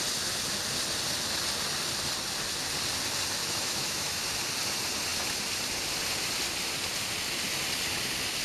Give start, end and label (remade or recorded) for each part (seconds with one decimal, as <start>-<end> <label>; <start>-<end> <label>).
0.0-3.4 recorded; 3.4-4.2 remade; 4.2-8.4 recorded